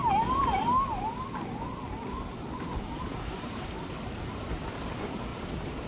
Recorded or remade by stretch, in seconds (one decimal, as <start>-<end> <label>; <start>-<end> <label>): 0.0-5.3 recorded; 5.3-5.9 remade